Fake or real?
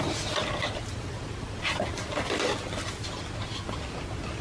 real